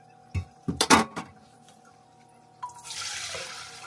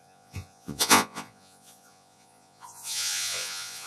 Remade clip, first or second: second